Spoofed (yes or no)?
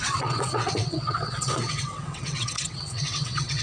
yes